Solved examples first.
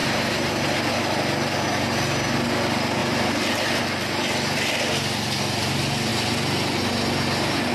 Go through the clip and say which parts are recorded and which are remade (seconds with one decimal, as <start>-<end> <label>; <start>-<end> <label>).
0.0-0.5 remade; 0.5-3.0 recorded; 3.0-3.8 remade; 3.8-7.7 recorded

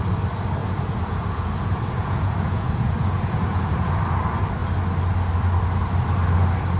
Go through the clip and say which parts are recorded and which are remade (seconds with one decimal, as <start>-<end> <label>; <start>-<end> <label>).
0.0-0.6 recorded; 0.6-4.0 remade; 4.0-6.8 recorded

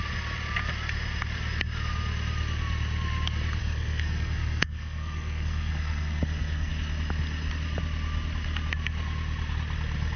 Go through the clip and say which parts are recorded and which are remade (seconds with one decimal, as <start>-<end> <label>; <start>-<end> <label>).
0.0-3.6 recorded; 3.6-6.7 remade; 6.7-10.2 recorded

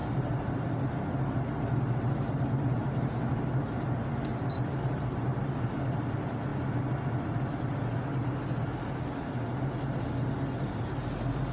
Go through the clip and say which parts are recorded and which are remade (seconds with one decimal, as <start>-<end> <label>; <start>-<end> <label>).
0.0-11.5 recorded